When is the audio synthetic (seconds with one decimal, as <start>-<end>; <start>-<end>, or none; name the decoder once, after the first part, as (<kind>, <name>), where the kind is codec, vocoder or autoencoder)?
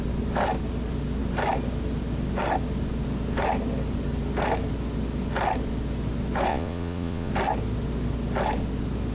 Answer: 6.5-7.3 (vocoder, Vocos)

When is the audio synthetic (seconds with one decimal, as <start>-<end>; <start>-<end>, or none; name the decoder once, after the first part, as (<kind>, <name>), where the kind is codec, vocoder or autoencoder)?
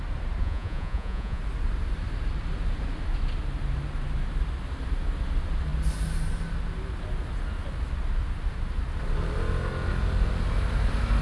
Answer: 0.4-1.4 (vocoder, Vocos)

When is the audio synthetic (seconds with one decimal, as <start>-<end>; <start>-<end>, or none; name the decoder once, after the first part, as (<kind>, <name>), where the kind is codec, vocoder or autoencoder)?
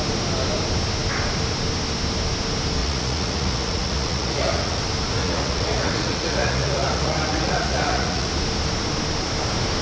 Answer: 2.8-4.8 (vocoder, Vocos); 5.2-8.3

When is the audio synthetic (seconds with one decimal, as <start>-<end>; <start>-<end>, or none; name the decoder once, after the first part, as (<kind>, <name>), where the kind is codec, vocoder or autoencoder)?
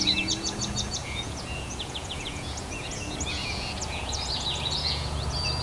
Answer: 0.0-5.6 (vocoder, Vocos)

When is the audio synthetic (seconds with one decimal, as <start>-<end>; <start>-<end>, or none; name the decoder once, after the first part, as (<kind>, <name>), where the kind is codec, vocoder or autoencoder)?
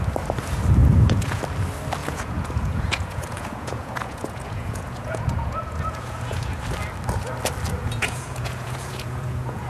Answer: 0.8-1.4 (vocoder, Vocos); 2.0-6.6; 7.8-9.7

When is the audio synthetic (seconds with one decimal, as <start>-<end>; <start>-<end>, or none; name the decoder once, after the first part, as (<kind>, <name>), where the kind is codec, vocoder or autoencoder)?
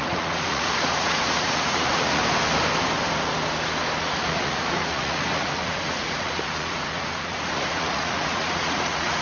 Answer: 0.0-2.2 (vocoder, Vocos); 4.0-9.2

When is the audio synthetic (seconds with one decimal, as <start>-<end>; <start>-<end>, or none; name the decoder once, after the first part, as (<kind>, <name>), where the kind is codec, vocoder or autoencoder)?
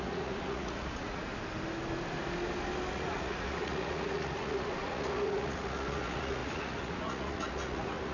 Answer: 0.0-1.3 (vocoder, Vocos); 2.9-8.1